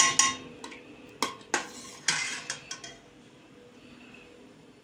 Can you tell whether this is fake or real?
real